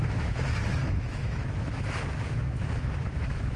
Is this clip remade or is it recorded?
remade